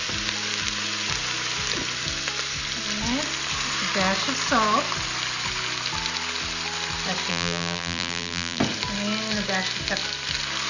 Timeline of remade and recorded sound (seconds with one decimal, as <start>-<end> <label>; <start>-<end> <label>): 0.0-7.3 recorded; 7.3-8.6 remade; 8.6-10.7 recorded